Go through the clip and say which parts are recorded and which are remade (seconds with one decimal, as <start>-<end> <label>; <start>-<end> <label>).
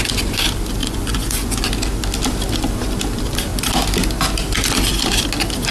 0.0-0.8 recorded; 0.8-1.6 remade; 1.6-5.7 recorded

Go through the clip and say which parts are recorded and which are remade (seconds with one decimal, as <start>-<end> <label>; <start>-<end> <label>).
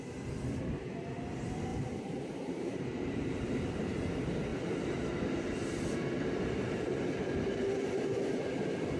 0.0-1.7 recorded; 1.7-3.5 remade; 3.5-9.0 recorded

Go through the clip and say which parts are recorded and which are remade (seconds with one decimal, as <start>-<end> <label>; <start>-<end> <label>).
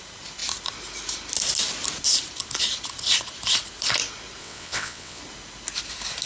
0.0-4.4 recorded; 4.4-5.2 remade; 5.2-6.3 recorded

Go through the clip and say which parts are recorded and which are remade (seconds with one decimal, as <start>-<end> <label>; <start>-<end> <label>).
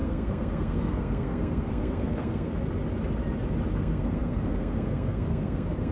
0.0-2.5 remade; 2.5-3.7 recorded; 3.7-5.9 remade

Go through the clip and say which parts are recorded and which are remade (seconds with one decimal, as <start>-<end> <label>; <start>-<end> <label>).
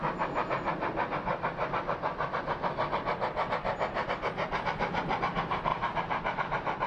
0.0-6.9 recorded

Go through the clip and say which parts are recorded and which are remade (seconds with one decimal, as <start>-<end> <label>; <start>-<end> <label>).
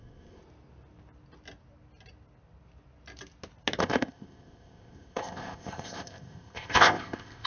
0.0-0.4 remade; 0.4-3.8 recorded; 3.8-7.5 remade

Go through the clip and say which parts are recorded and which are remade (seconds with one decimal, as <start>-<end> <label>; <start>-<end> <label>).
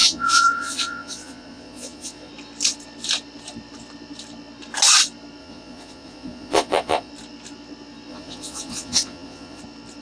0.0-2.3 remade; 2.3-5.4 recorded; 5.4-7.1 remade; 7.1-8.1 recorded; 8.1-9.6 remade; 9.6-10.0 recorded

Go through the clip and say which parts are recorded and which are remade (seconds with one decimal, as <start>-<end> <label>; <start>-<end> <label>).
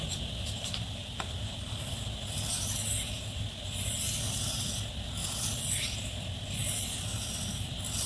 0.0-8.1 recorded